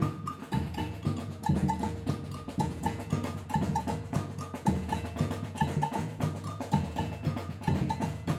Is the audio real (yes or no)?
no